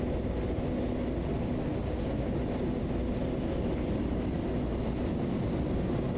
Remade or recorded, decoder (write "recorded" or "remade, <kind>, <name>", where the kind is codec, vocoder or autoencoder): recorded